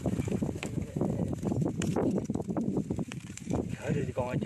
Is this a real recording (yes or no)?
no